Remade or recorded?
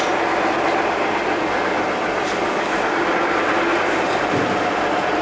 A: recorded